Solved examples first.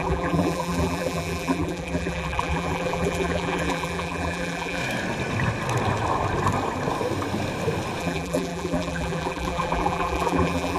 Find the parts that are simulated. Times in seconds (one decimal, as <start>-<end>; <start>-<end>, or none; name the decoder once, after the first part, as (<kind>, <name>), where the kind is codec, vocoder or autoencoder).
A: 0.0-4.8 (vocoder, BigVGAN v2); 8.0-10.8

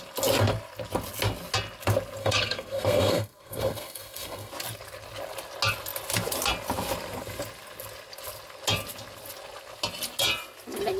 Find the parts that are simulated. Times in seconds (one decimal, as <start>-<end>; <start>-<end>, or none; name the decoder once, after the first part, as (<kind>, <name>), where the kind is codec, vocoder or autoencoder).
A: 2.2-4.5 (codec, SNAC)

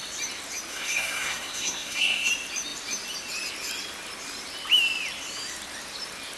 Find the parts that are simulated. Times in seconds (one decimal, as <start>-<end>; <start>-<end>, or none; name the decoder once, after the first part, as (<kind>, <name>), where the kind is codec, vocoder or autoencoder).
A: 0.7-2.3 (codec, SNAC)

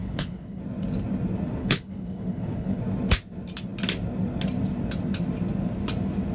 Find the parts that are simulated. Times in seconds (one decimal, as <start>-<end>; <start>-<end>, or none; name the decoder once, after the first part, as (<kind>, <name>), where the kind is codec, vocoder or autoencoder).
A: 0.0-0.6 (codec, HILCodec); 1.6-2.8